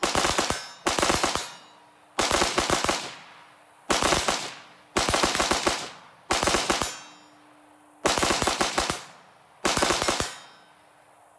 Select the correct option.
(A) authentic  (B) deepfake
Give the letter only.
A